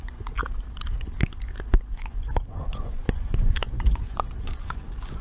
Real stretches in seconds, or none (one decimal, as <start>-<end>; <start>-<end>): 0.4-1.9

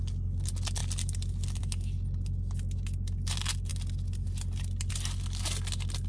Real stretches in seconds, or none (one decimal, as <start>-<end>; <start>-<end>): 0.0-6.1

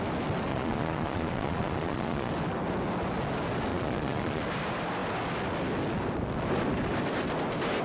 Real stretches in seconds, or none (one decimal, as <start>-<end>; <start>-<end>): 0.0-0.5; 2.3-3.7; 4.4-7.8

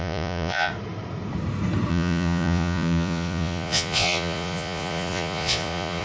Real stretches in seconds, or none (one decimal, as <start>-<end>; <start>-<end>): 0.7-1.9

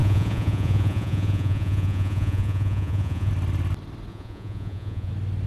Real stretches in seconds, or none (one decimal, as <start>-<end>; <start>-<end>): 3.3-4.1; 5.1-5.5

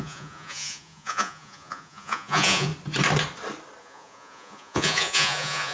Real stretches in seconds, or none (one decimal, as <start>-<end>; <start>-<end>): 2.7-3.8